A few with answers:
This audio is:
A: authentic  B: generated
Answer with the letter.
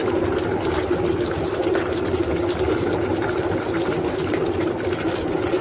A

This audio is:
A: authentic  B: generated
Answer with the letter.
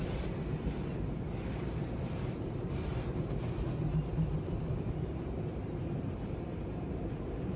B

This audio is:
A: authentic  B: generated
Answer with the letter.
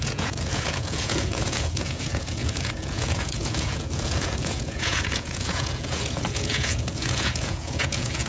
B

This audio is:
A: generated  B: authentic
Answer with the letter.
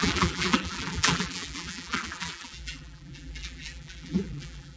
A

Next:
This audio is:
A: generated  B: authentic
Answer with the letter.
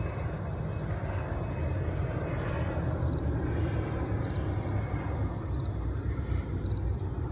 B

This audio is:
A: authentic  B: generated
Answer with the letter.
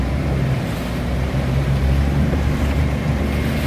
B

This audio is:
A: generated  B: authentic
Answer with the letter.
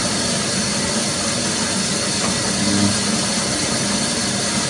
B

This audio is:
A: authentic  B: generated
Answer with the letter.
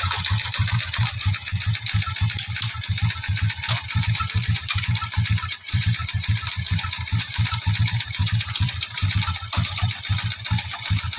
B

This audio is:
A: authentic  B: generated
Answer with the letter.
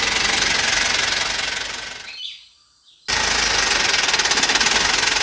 A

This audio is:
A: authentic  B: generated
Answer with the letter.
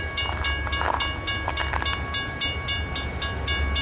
A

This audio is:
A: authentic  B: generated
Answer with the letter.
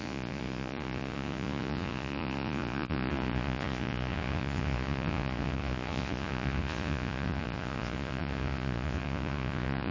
B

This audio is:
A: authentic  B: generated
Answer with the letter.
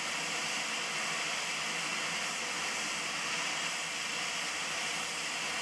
A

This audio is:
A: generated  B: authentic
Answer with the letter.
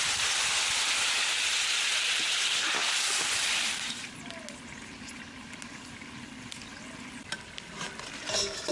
B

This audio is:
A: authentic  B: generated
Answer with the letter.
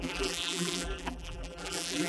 B